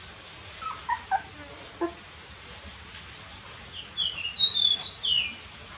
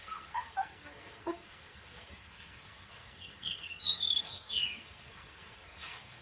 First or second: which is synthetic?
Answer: second